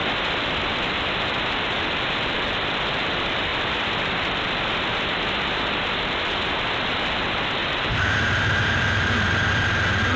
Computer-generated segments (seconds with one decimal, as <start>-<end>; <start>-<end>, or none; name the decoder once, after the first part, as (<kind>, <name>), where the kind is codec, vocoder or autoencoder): 7.6-9.5 (vocoder, BigVGAN v2)